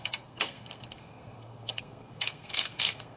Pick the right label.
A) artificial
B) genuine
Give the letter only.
A